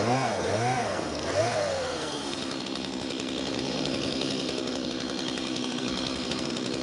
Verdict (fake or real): fake